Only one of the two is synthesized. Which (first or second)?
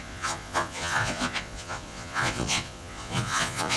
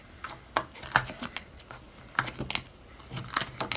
first